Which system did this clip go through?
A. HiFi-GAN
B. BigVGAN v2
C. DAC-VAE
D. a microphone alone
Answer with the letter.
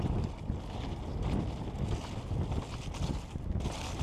D